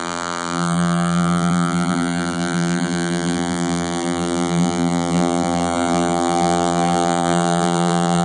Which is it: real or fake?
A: fake